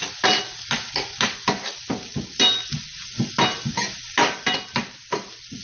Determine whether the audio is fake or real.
real